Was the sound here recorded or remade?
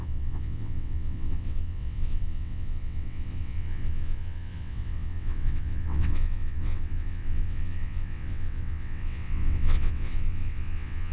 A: remade